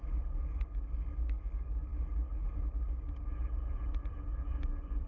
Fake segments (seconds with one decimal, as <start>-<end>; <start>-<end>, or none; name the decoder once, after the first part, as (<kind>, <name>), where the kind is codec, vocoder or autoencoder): none